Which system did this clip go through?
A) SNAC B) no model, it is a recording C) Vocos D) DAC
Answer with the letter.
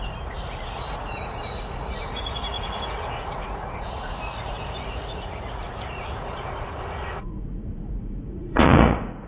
C